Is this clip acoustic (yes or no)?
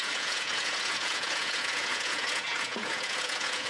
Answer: no